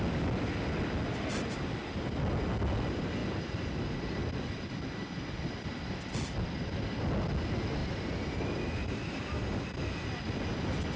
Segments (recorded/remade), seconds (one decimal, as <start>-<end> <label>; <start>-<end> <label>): 0.0-7.8 recorded; 7.8-8.4 remade; 8.4-8.8 recorded; 8.8-9.7 remade; 9.7-11.0 recorded